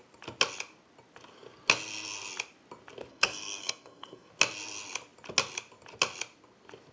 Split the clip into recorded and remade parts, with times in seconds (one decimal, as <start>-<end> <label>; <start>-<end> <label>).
0.0-3.1 recorded; 3.1-4.3 remade; 4.3-6.9 recorded